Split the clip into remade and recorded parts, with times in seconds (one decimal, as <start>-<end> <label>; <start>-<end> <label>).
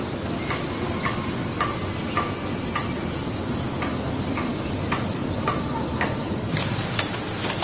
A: 0.0-7.6 recorded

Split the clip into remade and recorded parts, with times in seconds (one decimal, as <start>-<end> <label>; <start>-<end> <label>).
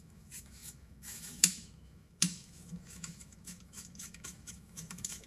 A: 0.0-5.3 remade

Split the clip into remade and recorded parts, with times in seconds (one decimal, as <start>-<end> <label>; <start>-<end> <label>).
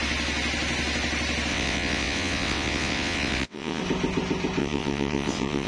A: 0.0-1.5 recorded; 1.5-3.8 remade; 3.8-4.6 recorded; 4.6-5.7 remade